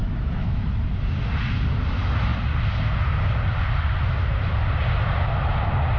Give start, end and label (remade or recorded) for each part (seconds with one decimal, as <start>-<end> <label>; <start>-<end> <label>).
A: 0.0-0.7 remade; 0.7-6.0 recorded